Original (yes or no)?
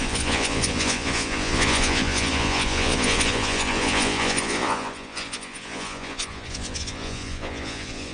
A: no